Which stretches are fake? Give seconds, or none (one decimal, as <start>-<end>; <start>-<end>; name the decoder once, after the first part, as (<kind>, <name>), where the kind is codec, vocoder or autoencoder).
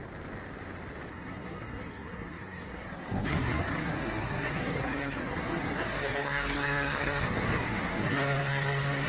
1.1-9.1 (codec, SNAC)